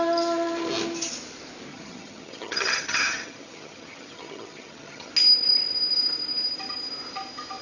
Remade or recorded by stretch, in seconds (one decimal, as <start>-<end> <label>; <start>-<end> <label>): 0.0-1.7 recorded; 1.7-5.1 remade; 5.1-7.6 recorded